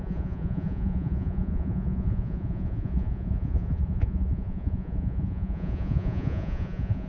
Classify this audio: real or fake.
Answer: fake